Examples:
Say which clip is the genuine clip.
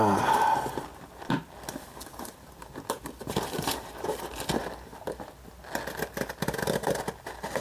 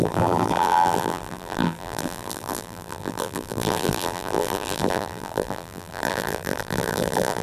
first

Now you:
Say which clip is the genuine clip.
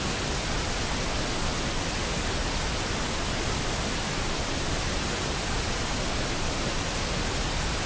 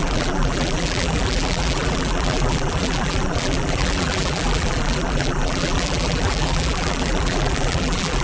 first